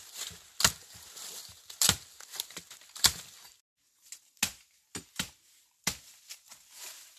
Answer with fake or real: real